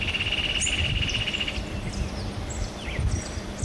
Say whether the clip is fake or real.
real